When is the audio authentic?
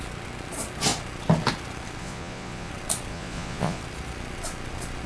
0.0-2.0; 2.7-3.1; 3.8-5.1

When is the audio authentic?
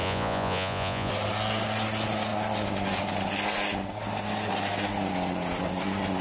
1.1-6.2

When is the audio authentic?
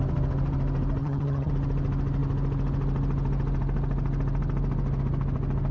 0.0-1.0; 1.5-5.7